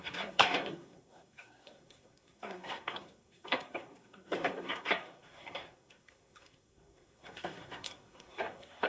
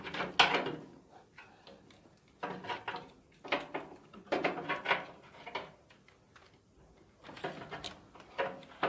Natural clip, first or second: second